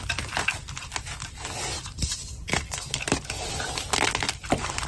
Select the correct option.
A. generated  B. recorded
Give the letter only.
B